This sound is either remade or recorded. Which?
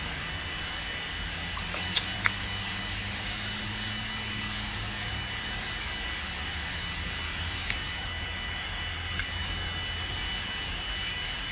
remade